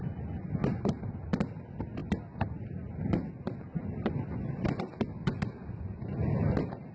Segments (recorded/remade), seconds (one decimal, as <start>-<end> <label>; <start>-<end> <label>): 0.0-6.9 recorded